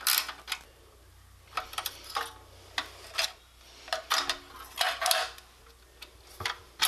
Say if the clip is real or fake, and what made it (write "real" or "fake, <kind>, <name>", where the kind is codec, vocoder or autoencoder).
real